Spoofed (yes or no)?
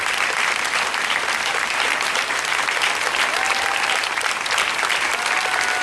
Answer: no